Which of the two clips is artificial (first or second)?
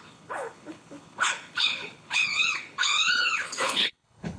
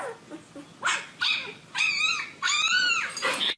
first